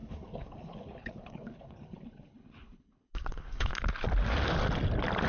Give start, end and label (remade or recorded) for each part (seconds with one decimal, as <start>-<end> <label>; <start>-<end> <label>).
0.0-3.7 remade; 3.7-5.3 recorded